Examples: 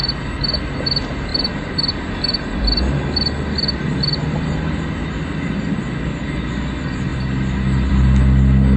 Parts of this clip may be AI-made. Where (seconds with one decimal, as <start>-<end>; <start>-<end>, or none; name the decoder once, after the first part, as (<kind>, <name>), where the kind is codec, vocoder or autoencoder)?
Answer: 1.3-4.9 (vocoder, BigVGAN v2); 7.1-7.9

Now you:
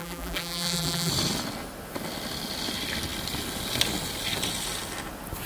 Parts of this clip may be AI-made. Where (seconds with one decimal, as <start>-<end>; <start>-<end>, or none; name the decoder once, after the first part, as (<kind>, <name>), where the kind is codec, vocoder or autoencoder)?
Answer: 0.0-1.1 (vocoder, BigVGAN v2)

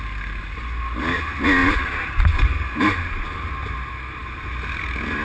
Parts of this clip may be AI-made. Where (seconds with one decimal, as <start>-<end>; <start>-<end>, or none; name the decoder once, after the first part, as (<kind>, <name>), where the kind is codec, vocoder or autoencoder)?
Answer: 1.6-3.1 (vocoder, BigVGAN v2)